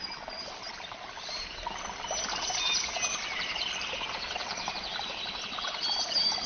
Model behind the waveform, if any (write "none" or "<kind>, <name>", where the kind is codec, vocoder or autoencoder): none